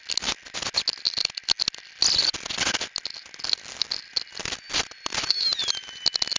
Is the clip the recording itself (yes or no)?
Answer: yes